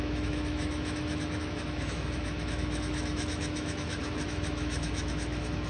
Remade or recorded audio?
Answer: remade